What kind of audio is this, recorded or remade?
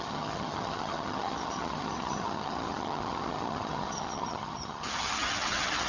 remade